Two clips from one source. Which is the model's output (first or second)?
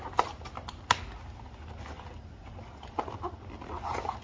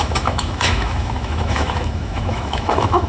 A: second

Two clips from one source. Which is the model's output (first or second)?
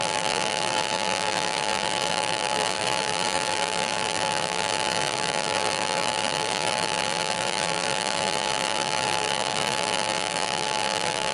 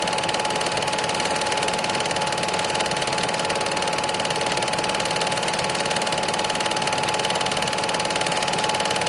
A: first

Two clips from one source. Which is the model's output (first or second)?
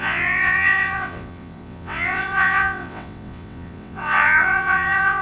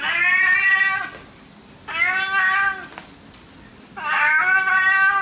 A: first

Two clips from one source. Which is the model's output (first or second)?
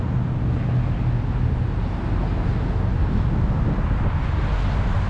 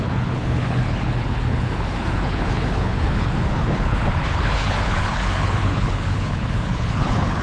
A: second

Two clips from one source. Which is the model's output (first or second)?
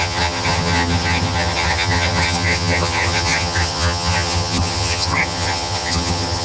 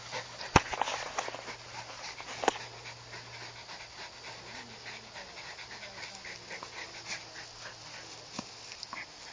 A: first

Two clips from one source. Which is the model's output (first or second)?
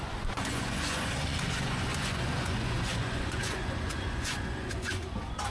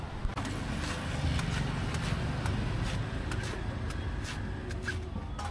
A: first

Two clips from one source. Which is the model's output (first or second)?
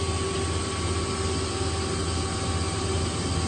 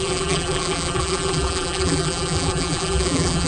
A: second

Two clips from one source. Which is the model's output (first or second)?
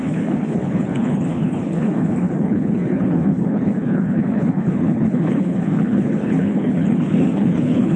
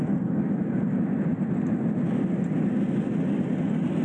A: first